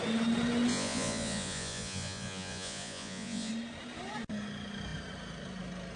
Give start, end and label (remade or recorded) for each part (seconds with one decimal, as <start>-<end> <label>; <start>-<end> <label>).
0.0-0.7 recorded; 0.7-3.5 remade; 3.5-6.0 recorded